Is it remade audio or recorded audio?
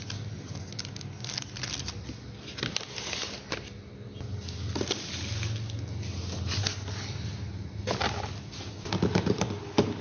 recorded